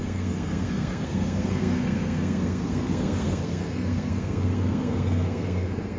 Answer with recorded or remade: remade